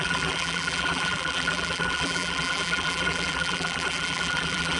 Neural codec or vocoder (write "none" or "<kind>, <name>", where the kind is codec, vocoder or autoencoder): vocoder, BigVGAN v2